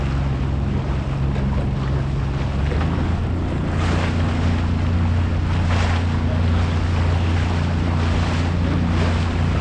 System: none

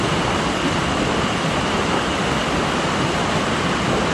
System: none